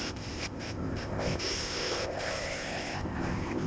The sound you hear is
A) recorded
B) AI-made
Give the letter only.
B